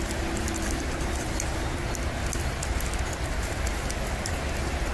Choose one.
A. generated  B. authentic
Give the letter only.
B